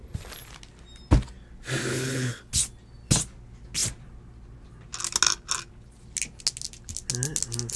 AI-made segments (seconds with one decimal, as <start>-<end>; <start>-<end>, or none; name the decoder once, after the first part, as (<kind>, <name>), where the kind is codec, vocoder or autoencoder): 1.9-2.5 (codec, HILCodec)

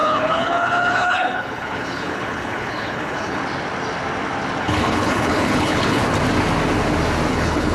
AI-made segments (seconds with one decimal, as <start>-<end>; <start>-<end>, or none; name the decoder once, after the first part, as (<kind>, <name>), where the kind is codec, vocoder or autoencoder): 0.0-3.4 (codec, HILCodec); 4.6-6.0; 7.3-7.7

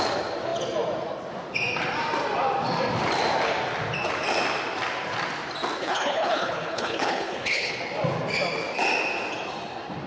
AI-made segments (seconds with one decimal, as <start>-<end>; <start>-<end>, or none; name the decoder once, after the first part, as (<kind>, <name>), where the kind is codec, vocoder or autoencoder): 5.8-7.8 (codec, HILCodec)

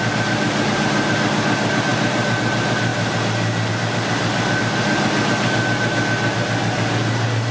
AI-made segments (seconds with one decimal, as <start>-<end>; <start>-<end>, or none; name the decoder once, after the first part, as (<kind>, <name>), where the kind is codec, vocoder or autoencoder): none

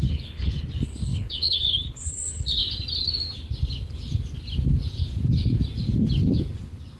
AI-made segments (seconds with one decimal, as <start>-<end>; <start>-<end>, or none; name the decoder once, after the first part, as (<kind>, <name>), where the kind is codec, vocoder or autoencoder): 0.0-2.6 (codec, HILCodec)

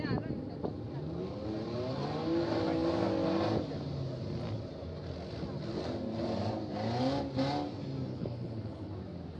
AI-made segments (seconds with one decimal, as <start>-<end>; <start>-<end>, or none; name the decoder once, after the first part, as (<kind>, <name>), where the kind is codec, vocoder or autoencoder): 8.1-8.9 (codec, HILCodec)

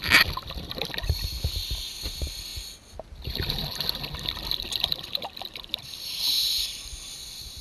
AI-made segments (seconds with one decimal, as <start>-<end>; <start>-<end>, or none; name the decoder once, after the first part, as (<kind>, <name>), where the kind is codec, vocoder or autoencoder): none

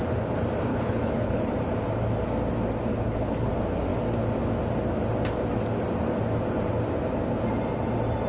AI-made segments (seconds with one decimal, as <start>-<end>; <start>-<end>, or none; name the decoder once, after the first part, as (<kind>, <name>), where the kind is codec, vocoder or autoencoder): 0.7-1.5 (codec, HILCodec); 2.9-3.5